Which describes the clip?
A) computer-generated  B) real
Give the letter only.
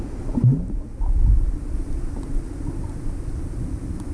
B